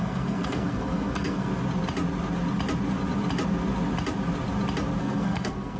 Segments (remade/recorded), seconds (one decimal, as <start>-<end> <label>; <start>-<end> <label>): 0.0-1.5 remade; 1.5-5.0 recorded; 5.0-5.8 remade